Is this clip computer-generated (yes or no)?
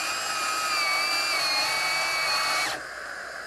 no